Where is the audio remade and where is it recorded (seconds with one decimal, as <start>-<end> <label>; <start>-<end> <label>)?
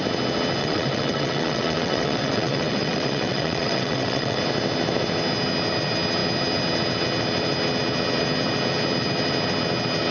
0.0-0.6 recorded; 0.6-4.4 remade; 4.4-10.1 recorded